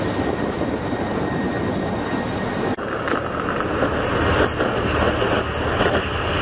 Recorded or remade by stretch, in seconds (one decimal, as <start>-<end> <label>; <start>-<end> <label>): 0.0-6.4 recorded